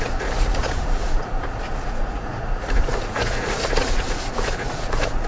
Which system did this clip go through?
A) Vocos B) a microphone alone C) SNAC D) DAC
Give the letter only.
A